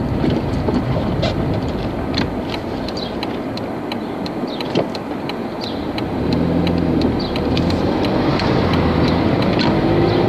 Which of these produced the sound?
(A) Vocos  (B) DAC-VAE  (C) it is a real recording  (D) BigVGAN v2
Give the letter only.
D